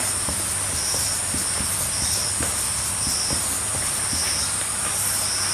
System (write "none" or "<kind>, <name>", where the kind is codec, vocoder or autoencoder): none